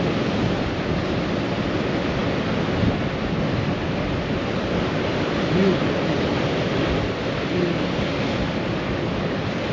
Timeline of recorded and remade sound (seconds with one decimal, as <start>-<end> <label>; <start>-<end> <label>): 0.0-9.7 recorded